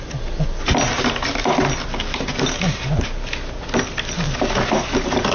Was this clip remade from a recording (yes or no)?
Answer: no